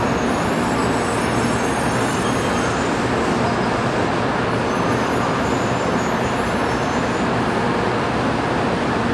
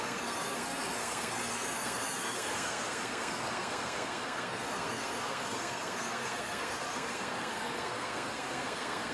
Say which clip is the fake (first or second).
second